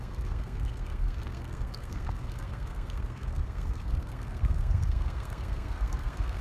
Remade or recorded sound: remade